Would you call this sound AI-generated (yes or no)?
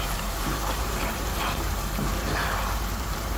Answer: yes